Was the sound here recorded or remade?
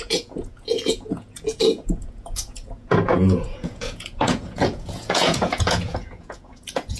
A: remade